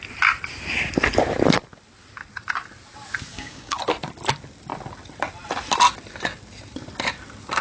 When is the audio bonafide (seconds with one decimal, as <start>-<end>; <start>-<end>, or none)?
0.0-3.3; 3.8-7.6